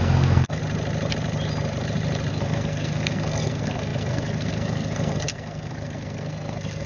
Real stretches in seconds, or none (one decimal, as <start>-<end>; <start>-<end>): 0.6-2.3